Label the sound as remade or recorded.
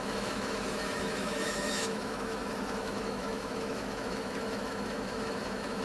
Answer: remade